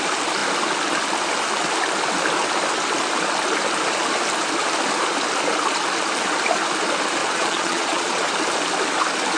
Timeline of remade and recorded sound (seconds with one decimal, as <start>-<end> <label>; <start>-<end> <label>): 0.0-7.2 recorded; 7.2-8.3 remade; 8.3-9.4 recorded